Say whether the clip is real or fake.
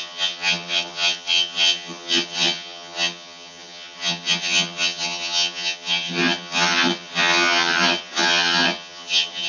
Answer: fake